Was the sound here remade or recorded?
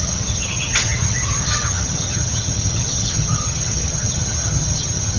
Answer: remade